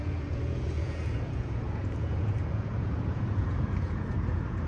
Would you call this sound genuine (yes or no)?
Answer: no